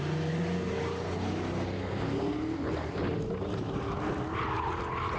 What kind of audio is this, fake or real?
real